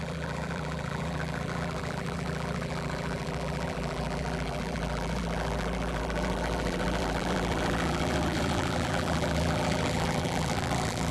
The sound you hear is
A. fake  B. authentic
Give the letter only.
A